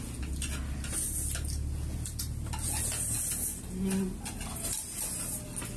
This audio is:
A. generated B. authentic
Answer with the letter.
B